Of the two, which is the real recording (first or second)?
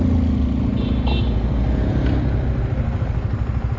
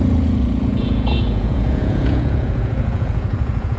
first